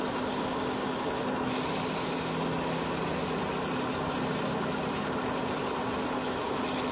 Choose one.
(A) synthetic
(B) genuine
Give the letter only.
B